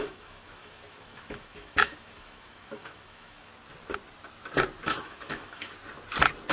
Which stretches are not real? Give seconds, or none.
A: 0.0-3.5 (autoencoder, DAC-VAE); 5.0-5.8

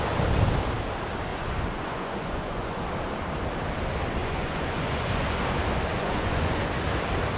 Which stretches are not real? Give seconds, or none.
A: 1.3-2.9 (vocoder, Vocos); 4.2-5.4; 5.9-6.7

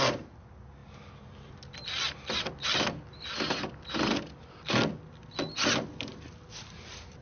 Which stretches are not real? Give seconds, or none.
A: none

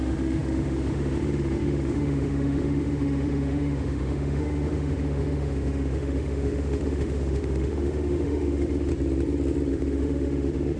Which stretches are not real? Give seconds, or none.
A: 0.0-8.9 (autoencoder, DAC-VAE); 9.7-10.8